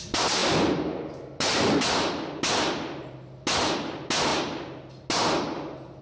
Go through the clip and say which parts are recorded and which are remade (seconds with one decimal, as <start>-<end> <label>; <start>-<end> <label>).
0.0-6.0 recorded